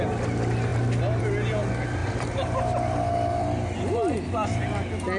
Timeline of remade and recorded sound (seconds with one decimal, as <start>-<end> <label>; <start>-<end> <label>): 0.0-5.2 recorded